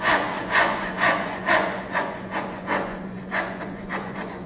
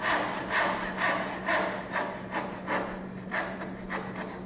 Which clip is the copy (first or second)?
first